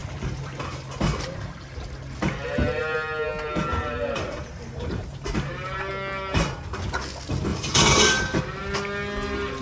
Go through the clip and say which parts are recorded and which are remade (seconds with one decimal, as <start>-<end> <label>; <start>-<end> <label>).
0.0-0.9 remade; 0.9-3.7 recorded; 3.7-5.9 remade; 5.9-7.5 recorded; 7.5-8.4 remade; 8.4-9.6 recorded